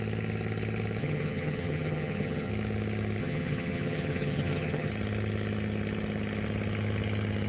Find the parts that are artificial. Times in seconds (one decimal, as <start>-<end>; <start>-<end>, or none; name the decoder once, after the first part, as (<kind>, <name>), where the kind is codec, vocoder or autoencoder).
1.0-2.5 (vocoder, HiFi-GAN); 3.2-4.9